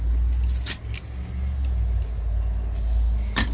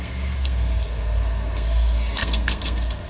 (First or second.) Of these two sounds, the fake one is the second